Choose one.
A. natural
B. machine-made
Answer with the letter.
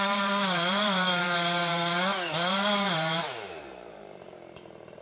B